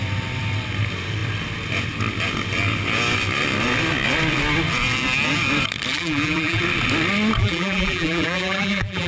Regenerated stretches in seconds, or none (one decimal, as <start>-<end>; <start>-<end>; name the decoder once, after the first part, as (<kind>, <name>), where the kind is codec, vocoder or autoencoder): 5.9-6.6 (vocoder, BigVGAN v2); 7.4-9.1